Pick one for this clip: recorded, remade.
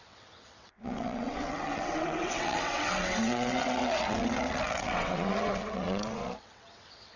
remade